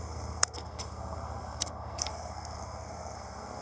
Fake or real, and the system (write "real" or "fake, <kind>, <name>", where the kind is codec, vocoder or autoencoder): fake, codec, SNAC